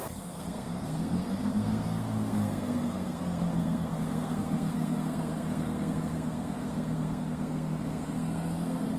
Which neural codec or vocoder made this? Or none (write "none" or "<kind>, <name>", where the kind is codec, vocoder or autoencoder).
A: codec, SNAC